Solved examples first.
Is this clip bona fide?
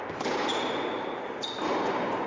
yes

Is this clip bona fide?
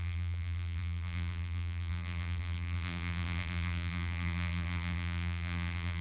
no